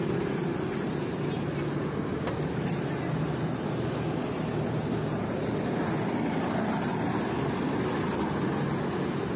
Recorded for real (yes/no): yes